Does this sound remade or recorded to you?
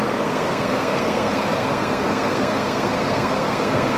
remade